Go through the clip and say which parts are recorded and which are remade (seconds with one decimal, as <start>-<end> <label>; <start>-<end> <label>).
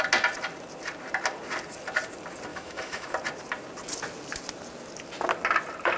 0.0-2.5 recorded; 2.5-3.1 remade; 3.1-6.0 recorded